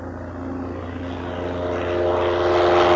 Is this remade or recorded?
recorded